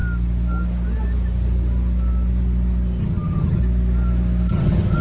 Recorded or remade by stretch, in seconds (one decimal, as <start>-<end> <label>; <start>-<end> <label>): 0.0-3.0 recorded; 3.0-3.6 remade; 3.6-4.5 recorded; 4.5-5.0 remade